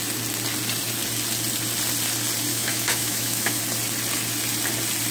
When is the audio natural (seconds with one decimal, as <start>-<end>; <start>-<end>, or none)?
0.0-2.5; 3.6-5.1